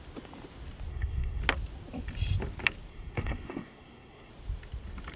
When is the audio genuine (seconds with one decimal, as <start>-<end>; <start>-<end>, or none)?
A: 0.0-0.9; 1.4-2.9; 4.3-5.2